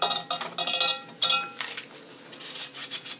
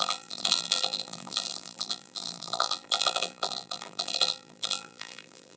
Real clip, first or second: first